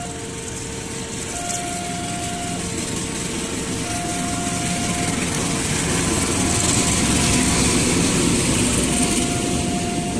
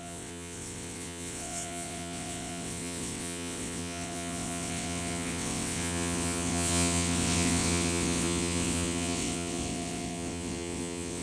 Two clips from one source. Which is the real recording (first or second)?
first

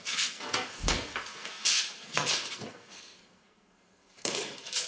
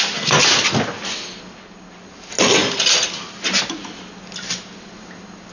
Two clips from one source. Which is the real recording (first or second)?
second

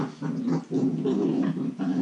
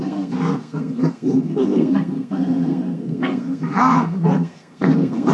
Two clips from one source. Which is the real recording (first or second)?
first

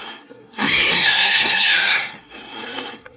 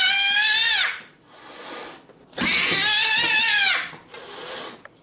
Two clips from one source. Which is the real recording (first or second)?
second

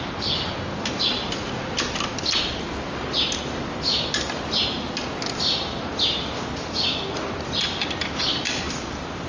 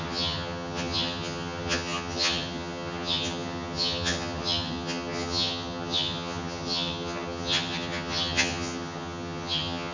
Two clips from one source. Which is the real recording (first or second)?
first